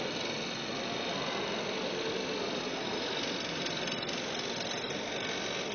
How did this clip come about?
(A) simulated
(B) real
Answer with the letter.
B